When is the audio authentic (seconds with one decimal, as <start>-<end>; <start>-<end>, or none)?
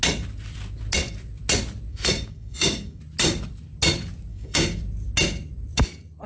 0.0-1.9; 3.0-4.3; 4.8-6.3